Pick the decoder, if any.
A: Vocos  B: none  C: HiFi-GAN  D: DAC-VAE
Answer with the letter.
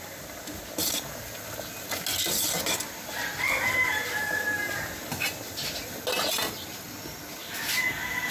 B